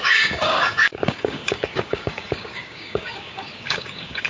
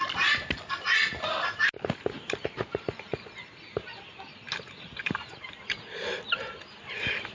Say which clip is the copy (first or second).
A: first